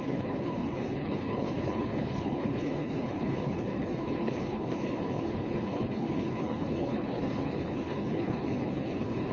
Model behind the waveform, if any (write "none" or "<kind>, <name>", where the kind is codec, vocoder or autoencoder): codec, HILCodec